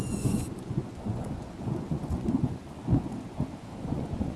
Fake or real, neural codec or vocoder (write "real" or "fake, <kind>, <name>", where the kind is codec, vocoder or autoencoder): fake, vocoder, Vocos